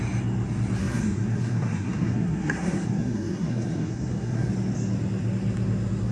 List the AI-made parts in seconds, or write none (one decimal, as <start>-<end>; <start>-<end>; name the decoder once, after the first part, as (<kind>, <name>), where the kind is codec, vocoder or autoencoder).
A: 0.8-4.5 (codec, SNAC)